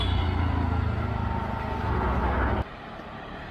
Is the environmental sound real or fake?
real